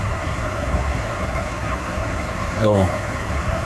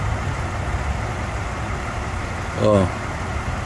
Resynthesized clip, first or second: first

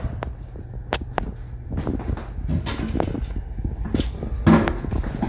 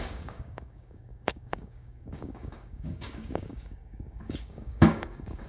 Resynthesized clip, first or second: second